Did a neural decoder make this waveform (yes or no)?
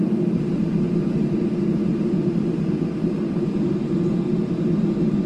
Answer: no